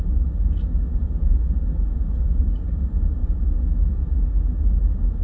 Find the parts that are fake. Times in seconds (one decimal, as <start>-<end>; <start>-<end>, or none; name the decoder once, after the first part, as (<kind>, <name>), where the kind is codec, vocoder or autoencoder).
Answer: 1.0-2.4 (vocoder, Vocos)